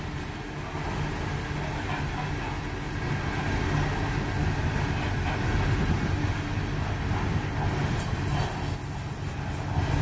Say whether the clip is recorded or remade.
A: recorded